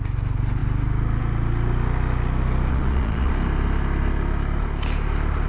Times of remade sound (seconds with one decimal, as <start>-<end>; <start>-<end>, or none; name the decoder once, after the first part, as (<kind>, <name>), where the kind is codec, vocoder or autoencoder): 2.7-3.3 (vocoder, Vocos)